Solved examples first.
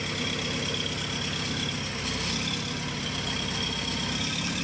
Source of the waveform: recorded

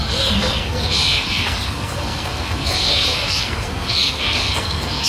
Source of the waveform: remade